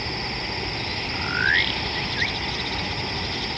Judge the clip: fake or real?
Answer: real